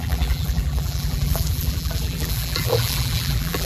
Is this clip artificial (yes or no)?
yes